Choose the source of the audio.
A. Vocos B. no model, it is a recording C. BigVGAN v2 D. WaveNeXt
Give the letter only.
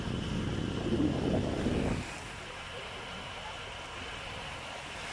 B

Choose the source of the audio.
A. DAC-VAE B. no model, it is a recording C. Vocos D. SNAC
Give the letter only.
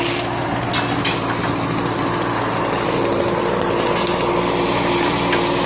B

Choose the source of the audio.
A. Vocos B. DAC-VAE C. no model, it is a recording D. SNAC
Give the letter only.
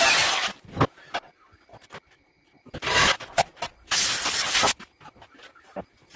C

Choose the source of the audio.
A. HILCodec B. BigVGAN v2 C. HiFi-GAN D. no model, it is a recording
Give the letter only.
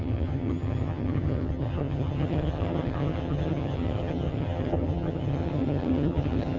C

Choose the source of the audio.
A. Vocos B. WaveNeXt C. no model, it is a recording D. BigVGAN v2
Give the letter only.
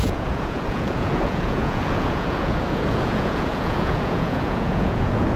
A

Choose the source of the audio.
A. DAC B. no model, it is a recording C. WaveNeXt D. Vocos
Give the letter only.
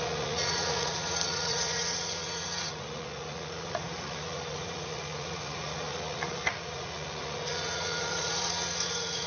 D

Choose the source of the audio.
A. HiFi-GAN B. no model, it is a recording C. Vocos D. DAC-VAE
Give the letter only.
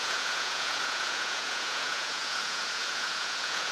C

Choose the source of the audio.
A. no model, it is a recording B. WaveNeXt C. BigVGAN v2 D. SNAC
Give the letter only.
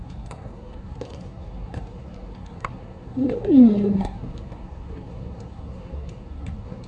D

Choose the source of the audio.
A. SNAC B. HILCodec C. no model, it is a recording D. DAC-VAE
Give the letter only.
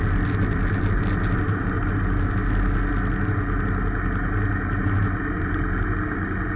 C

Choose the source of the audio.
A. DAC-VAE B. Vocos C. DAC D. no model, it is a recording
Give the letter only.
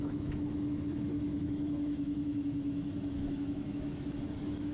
A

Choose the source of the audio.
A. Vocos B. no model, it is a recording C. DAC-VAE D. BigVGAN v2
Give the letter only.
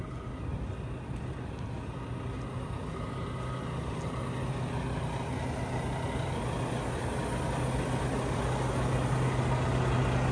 B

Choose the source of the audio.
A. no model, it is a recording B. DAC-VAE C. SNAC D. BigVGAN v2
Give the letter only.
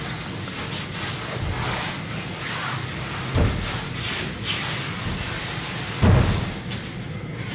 A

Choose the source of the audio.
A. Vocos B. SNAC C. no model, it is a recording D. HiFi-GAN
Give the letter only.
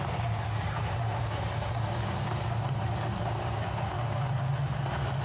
C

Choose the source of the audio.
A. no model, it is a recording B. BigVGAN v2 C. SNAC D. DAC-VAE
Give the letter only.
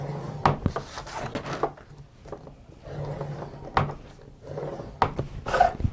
A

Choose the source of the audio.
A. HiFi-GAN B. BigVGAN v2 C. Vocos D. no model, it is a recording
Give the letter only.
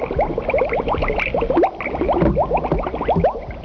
D